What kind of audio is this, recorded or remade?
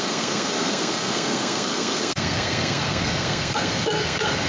remade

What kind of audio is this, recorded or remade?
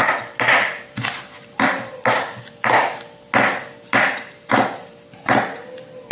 recorded